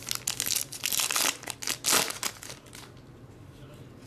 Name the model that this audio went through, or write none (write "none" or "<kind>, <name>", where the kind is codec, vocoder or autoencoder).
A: none